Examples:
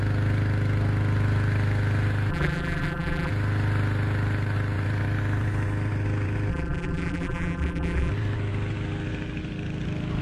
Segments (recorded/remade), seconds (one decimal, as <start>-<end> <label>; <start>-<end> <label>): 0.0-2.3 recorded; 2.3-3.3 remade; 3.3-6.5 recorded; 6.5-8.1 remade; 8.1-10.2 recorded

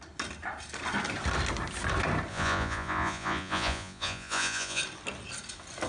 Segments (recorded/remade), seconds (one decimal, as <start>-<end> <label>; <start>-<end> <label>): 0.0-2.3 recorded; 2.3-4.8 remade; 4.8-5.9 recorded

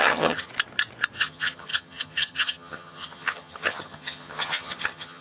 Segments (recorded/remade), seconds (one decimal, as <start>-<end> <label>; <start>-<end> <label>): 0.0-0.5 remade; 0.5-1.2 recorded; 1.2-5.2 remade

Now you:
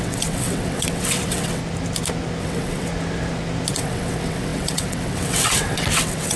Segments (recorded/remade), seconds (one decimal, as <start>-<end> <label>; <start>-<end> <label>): 0.0-1.6 remade; 1.6-2.4 recorded; 2.4-2.9 remade; 2.9-3.7 recorded; 3.7-6.4 remade

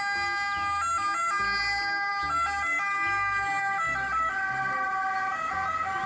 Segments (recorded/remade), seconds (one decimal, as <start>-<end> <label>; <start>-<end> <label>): 0.0-6.1 recorded

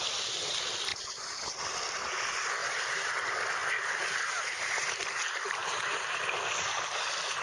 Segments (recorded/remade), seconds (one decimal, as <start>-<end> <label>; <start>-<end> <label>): 0.0-0.9 recorded; 0.9-1.6 remade; 1.6-2.6 recorded; 2.6-3.1 remade; 3.1-5.6 recorded; 5.6-6.2 remade; 6.2-7.4 recorded

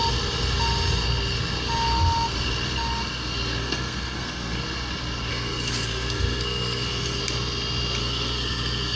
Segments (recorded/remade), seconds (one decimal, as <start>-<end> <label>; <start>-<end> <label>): 0.0-3.6 recorded; 3.6-4.6 remade; 4.6-5.3 recorded; 5.3-7.2 remade; 7.2-8.0 recorded; 8.0-9.0 remade